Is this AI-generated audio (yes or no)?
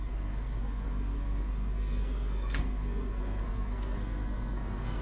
yes